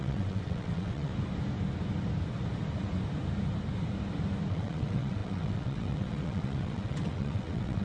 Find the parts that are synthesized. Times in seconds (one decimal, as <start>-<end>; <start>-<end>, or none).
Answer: 0.0-1.1; 4.5-7.8